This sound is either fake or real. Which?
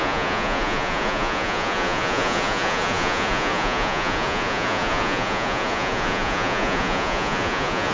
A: fake